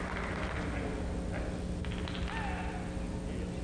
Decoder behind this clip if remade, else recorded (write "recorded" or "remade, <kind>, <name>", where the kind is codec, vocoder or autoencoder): recorded